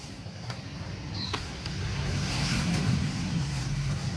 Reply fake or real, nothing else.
fake